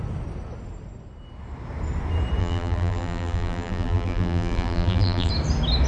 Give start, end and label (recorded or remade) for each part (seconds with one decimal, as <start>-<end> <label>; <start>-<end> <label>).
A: 0.0-2.4 recorded; 2.4-5.3 remade; 5.3-5.9 recorded